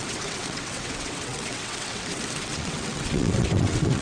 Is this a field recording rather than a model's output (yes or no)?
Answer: no